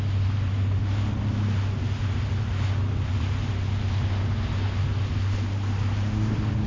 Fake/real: real